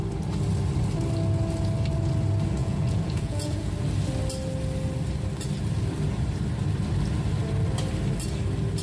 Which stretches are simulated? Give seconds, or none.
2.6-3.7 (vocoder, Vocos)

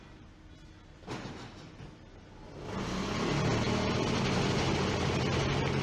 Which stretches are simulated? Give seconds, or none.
none

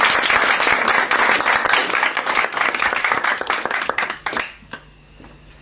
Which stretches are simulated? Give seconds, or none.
1.8-5.6 (codec, DAC)

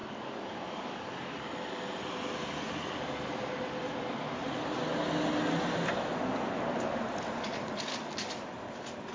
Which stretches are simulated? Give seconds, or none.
0.0-1.4 (codec, DAC); 7.9-8.5

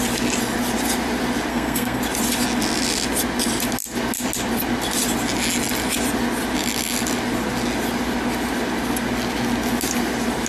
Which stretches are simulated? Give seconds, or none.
1.5-2.0 (codec, SNAC)

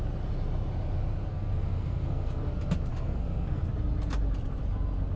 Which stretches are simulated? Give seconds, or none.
1.3-2.5 (codec, SNAC); 2.9-3.7

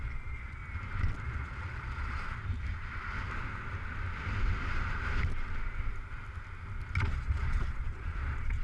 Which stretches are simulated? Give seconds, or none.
0.0-0.6 (vocoder, Vocos); 1.2-2.4; 7.0-8.6

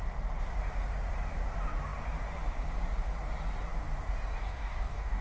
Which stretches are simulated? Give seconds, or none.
4.5-5.2 (codec, DAC)